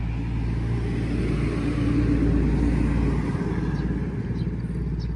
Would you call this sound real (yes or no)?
yes